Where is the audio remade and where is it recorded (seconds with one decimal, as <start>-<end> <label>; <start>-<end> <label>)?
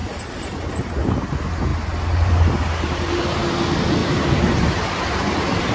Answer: 0.0-0.9 remade; 0.9-1.7 recorded; 1.7-3.2 remade; 3.2-4.0 recorded; 4.0-5.7 remade